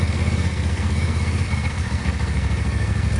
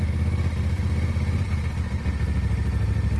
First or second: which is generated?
first